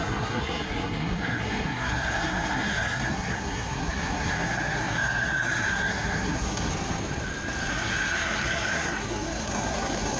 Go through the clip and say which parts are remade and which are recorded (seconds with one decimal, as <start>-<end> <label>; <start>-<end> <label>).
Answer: 0.0-6.7 remade; 6.7-7.7 recorded; 7.7-10.2 remade